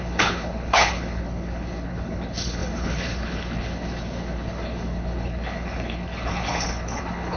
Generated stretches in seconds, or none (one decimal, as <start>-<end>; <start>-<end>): 0.0-7.4

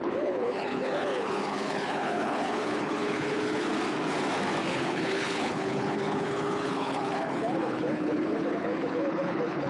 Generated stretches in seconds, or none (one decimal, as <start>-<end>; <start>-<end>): 0.0-3.7; 4.7-9.7

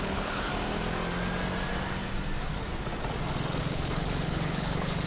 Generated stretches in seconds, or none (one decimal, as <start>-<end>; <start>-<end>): 0.0-0.5; 3.6-5.1

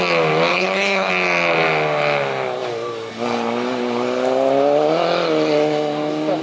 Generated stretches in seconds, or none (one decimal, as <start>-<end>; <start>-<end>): 0.5-1.1

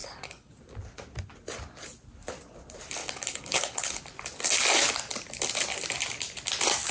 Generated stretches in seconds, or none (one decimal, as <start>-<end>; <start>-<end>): 0.0-0.5; 3.0-4.0

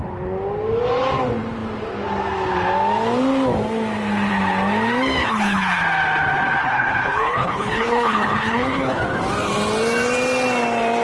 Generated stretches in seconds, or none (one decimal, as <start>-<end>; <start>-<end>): 5.2-5.8; 6.6-9.0

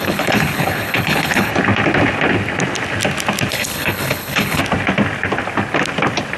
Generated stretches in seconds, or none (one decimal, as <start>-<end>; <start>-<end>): 0.0-1.5; 3.5-4.6